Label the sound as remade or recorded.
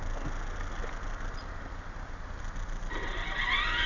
recorded